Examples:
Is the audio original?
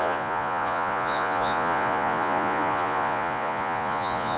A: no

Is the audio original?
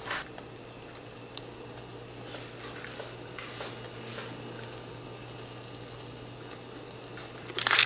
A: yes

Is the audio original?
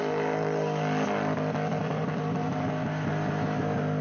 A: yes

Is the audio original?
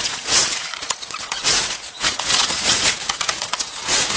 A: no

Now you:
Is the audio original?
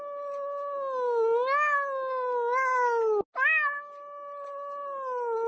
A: yes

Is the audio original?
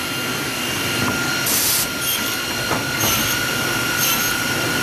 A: yes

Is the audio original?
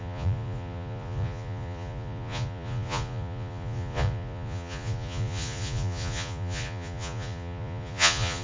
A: no